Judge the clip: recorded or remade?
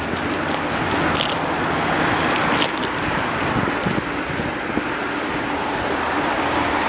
recorded